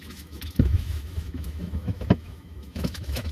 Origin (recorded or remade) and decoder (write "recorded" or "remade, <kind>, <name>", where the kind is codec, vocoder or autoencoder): remade, autoencoder, DAC-VAE